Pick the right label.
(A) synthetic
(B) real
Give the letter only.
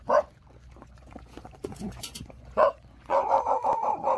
A